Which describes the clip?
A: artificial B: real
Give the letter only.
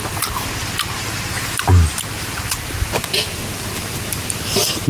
B